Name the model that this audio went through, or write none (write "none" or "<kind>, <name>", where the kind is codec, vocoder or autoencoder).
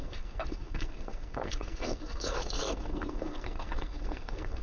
codec, SNAC